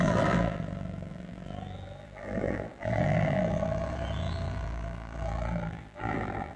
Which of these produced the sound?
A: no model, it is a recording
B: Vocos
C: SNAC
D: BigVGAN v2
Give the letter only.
D